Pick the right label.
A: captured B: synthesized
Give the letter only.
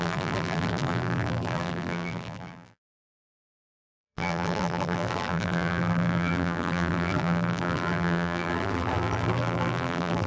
B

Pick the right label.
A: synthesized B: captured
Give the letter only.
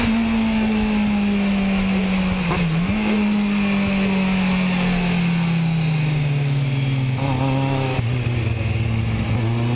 B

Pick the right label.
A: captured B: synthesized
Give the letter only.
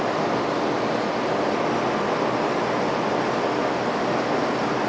A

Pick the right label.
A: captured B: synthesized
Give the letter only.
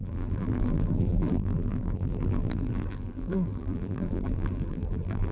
B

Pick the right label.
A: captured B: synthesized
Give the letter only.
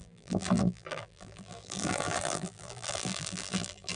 B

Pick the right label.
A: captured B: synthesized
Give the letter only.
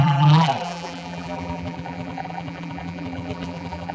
B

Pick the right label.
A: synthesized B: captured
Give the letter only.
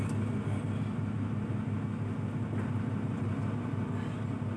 B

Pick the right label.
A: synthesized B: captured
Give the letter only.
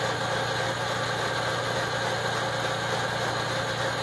B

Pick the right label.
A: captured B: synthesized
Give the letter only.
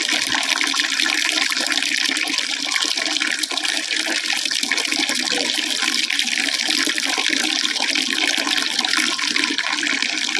B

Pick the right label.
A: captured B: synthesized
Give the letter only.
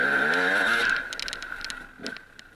A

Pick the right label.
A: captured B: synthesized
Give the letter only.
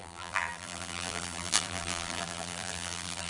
B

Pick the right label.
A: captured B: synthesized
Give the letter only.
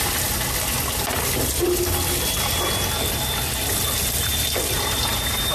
A